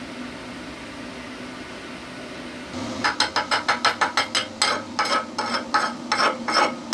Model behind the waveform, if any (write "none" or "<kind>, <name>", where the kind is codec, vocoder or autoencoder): none